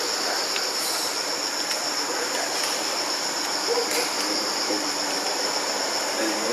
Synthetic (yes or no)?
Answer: no